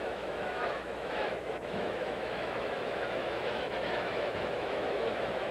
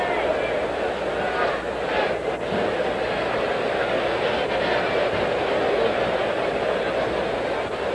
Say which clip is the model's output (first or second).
first